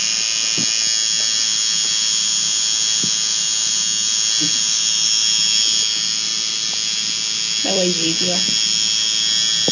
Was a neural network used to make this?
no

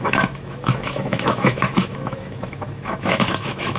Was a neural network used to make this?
yes